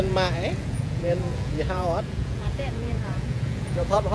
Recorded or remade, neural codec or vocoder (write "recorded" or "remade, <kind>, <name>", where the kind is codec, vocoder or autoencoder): remade, vocoder, Vocos